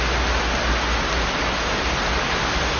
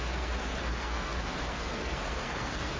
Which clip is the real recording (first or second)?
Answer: first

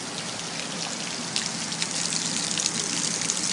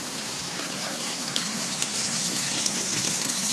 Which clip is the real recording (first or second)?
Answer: first